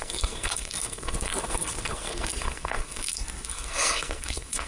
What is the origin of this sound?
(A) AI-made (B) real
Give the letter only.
A